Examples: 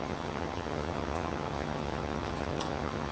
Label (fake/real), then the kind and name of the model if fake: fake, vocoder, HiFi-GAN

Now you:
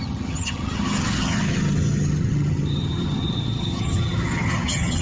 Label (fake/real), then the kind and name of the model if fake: fake, vocoder, HiFi-GAN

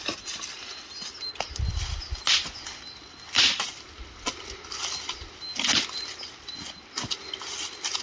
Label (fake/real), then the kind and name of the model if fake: real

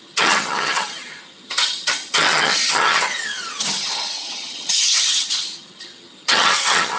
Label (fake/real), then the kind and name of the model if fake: fake, vocoder, HiFi-GAN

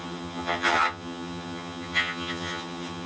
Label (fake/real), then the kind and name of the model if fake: fake, vocoder, HiFi-GAN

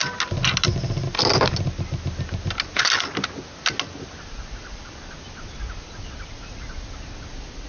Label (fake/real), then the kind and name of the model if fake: real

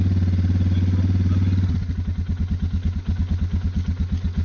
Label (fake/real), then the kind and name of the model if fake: real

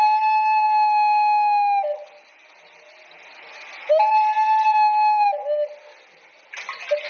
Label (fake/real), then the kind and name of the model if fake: real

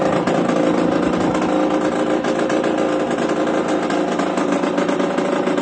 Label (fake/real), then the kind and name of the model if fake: real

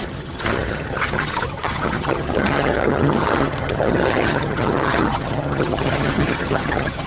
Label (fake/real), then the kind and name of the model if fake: fake, vocoder, HiFi-GAN